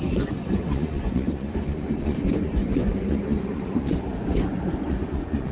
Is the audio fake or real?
fake